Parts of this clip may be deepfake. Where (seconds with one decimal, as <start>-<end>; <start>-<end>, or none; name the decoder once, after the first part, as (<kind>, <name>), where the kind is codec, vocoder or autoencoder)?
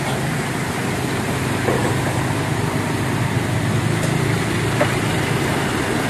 none